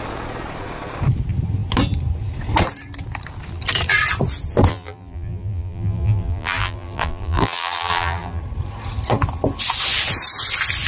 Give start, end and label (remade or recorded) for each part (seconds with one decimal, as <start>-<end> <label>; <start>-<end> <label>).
0.0-4.7 recorded; 4.7-8.4 remade; 8.4-10.9 recorded